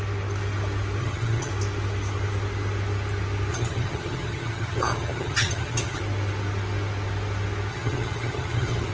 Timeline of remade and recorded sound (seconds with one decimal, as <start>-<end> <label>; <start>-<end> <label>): 0.0-1.0 recorded; 1.0-1.5 remade; 1.5-3.5 recorded; 3.5-6.0 remade; 6.0-7.7 recorded; 7.7-8.9 remade